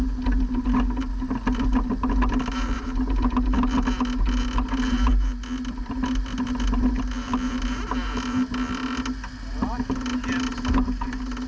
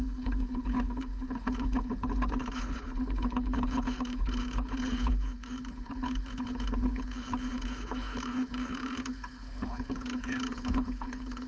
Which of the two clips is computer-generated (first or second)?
second